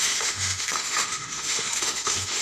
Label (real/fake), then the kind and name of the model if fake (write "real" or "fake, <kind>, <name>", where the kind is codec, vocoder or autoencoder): fake, autoencoder, DAC-VAE